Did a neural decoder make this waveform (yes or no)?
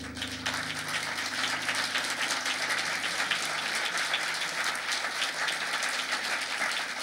no